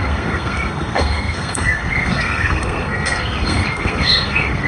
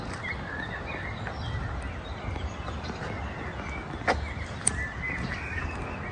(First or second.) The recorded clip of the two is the second